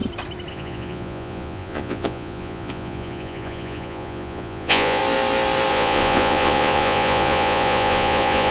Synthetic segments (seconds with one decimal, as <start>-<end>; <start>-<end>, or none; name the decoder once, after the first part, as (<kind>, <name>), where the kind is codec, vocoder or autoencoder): 0.5-5.0 (vocoder, Vocos); 5.7-8.5